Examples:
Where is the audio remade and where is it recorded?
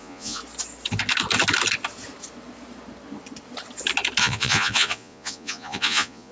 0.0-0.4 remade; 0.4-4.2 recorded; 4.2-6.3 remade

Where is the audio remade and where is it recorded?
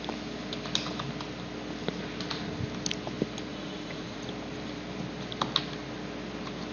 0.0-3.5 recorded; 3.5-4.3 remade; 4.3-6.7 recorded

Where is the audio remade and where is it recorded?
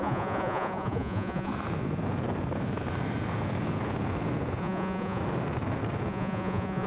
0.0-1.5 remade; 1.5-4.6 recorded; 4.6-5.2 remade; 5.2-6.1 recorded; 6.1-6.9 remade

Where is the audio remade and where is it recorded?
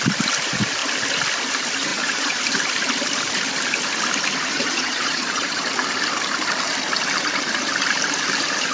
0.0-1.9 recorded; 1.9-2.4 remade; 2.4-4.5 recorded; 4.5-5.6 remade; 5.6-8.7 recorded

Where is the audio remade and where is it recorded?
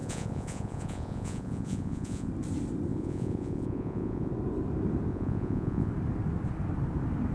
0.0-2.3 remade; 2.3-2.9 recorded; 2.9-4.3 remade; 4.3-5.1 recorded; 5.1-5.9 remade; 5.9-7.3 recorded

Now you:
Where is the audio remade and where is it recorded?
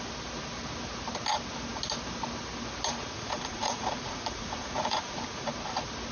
0.0-3.0 recorded; 3.0-5.5 remade; 5.5-6.1 recorded